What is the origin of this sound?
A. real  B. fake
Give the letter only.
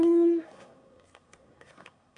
B